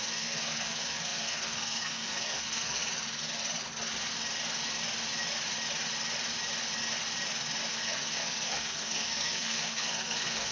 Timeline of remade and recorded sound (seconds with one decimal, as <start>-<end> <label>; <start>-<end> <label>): 0.0-2.8 remade; 2.8-7.7 recorded; 7.7-10.5 remade